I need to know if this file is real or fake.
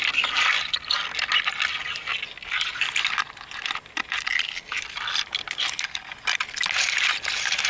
real